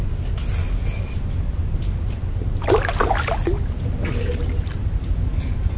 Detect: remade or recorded recorded